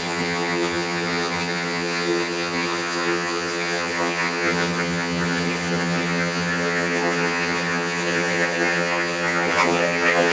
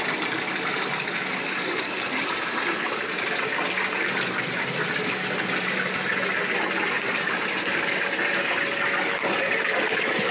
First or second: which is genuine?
second